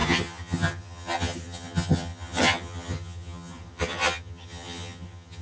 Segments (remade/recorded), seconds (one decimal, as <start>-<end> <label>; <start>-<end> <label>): 0.0-5.4 remade